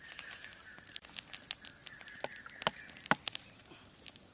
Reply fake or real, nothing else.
real